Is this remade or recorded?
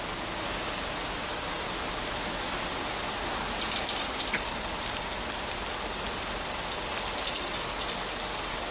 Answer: recorded